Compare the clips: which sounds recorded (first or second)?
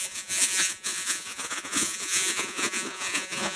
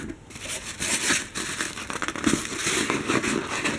second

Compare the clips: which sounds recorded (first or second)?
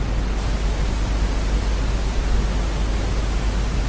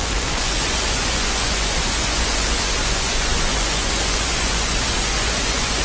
first